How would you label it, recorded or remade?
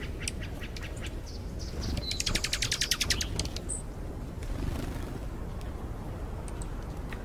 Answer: recorded